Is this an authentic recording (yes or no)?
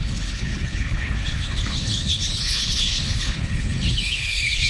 no